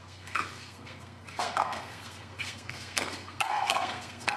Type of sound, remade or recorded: remade